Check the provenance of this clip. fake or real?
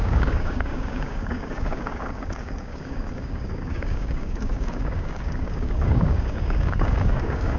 fake